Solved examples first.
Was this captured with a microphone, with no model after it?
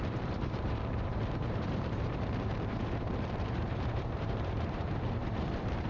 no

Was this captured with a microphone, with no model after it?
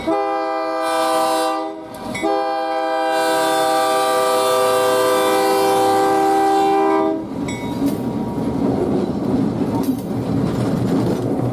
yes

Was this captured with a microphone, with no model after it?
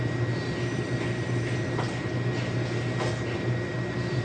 yes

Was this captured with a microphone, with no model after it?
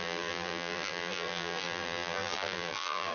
no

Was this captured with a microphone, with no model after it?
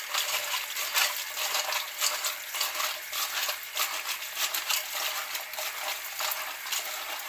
yes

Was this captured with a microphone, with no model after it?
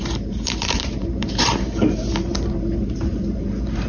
no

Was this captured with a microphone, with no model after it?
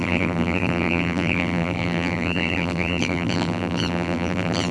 no